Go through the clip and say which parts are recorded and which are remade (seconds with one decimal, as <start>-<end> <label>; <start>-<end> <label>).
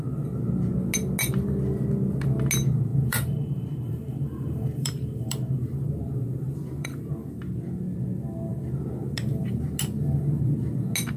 0.0-2.9 recorded; 2.9-7.1 remade; 7.1-11.2 recorded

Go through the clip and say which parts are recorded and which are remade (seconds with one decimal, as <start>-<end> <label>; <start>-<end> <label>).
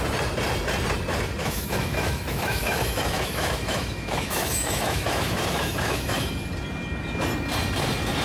0.0-1.4 recorded; 1.4-6.3 remade; 6.3-8.2 recorded